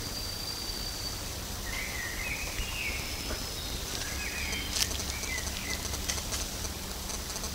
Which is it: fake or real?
real